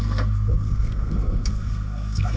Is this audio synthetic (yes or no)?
yes